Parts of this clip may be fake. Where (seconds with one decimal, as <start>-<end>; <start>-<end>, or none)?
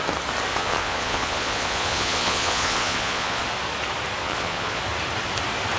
0.5-3.4; 4.2-4.8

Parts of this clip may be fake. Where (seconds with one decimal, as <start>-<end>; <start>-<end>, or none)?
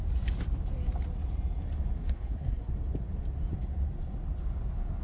2.0-2.7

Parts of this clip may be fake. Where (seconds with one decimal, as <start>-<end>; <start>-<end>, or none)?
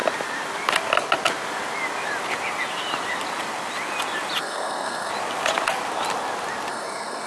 4.4-5.1; 6.7-7.3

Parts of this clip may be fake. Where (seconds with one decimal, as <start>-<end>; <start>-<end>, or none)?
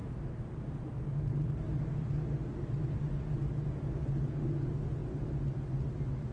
none